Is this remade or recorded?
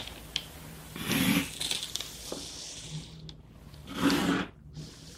recorded